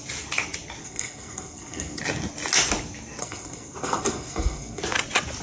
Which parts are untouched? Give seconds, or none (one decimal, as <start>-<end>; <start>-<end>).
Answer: 0.0-0.8; 2.0-3.2; 4.8-5.4